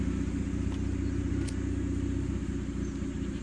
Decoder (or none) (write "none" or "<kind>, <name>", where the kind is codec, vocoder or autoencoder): vocoder, BigVGAN v2